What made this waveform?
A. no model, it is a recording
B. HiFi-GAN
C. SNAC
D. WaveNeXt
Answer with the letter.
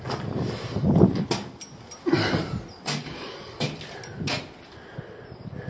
A